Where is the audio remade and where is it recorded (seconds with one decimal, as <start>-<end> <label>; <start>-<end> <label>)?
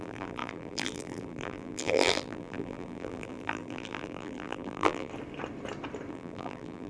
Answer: 0.0-5.1 remade; 5.1-6.1 recorded; 6.1-6.9 remade